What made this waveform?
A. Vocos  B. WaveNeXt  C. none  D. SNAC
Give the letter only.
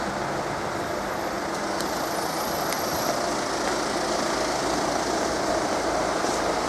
C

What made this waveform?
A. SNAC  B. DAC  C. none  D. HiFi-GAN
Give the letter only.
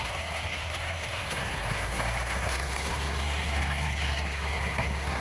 A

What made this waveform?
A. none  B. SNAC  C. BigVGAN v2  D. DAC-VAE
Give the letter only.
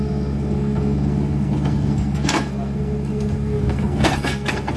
B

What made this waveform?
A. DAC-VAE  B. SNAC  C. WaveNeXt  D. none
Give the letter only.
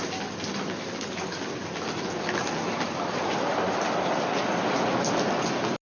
D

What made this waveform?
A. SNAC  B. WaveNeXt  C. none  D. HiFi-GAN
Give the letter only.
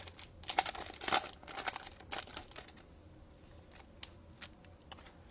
C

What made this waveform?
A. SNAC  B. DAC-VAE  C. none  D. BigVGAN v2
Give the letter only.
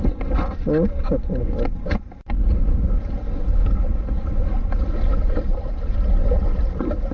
C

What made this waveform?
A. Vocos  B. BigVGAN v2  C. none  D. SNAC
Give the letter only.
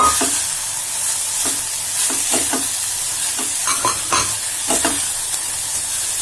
C